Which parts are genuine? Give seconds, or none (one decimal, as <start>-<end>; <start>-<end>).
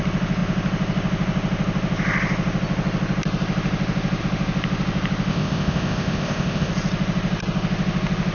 0.0-5.3; 6.7-8.3